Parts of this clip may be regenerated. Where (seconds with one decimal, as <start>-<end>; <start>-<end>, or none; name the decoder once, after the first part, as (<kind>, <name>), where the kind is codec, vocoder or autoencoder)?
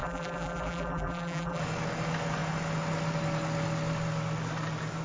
0.0-1.6 (vocoder, BigVGAN v2)